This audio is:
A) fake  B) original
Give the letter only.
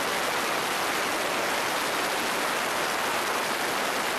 B